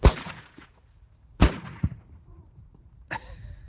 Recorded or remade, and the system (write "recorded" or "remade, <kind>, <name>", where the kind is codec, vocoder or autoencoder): remade, vocoder, Vocos